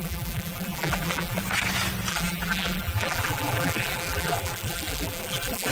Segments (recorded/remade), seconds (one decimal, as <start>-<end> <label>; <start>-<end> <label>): 0.0-1.4 remade; 1.4-2.1 recorded; 2.1-5.7 remade